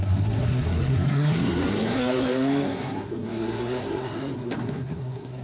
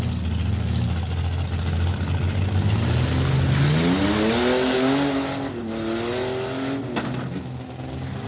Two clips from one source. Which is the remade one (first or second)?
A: first